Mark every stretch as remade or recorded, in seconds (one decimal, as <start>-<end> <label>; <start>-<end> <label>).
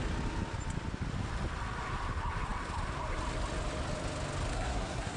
0.0-4.5 recorded; 4.5-5.2 remade